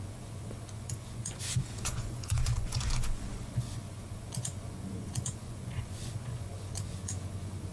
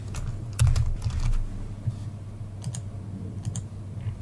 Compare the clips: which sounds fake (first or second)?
first